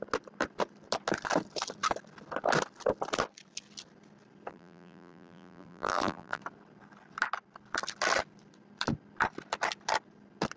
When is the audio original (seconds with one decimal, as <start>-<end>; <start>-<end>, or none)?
0.0-4.5; 6.4-10.6